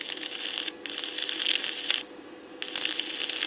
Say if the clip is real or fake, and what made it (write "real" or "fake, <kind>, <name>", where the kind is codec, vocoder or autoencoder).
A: real